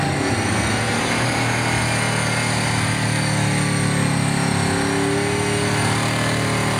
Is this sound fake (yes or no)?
no